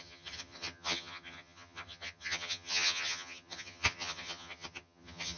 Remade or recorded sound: remade